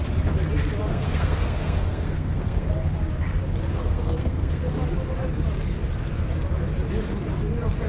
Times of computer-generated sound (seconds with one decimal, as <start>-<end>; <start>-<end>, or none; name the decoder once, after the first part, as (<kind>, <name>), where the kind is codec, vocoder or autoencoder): 0.9-2.7 (codec, SNAC); 3.7-4.7